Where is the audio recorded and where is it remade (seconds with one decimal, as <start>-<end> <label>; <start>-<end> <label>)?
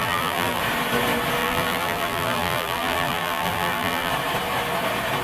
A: 0.0-0.6 remade; 0.6-1.4 recorded; 1.4-4.1 remade; 4.1-5.2 recorded